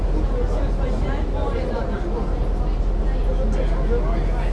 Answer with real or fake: real